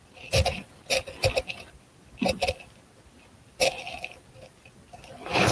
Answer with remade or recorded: recorded